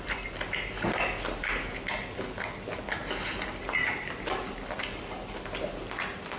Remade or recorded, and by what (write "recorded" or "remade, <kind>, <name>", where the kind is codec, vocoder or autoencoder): recorded